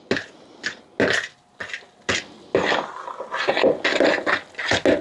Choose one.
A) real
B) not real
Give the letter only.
A